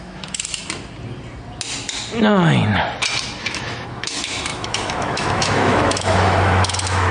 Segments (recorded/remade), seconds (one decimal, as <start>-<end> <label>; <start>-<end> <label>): 0.0-0.6 remade; 0.6-3.4 recorded; 3.4-7.1 remade